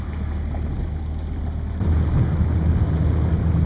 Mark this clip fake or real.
real